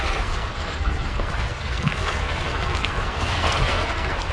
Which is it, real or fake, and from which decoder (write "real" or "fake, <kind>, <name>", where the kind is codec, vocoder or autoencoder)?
fake, codec, SNAC